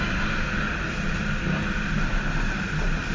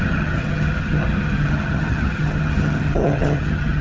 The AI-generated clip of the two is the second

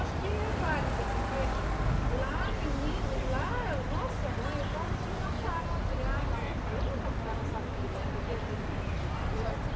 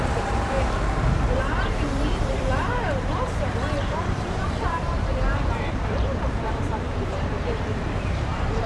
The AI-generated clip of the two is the second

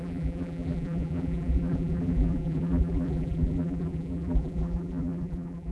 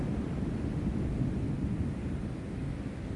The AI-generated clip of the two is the first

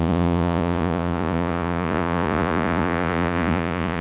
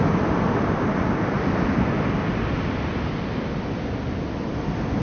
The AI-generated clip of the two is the first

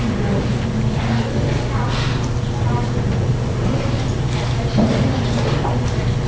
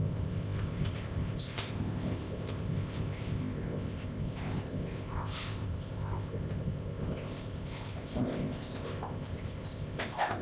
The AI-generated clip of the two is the second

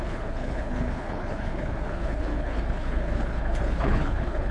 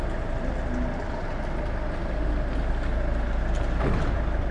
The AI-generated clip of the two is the first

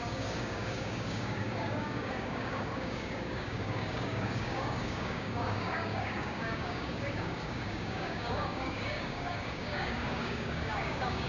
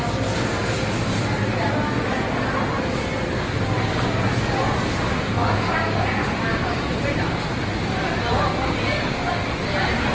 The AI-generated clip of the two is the first